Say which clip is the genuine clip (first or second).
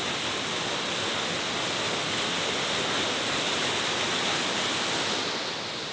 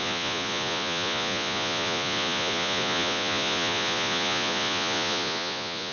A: first